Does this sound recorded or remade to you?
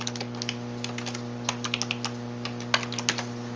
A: recorded